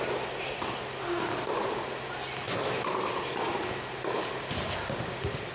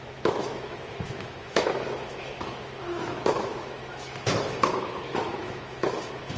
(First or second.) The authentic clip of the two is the first